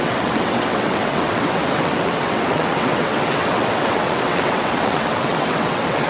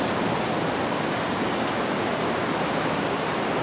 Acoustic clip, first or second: second